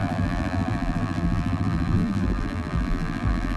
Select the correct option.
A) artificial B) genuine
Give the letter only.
A